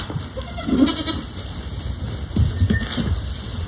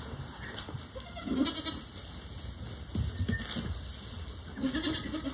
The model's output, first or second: first